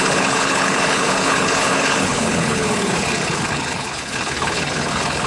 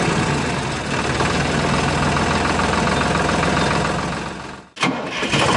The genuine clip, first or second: second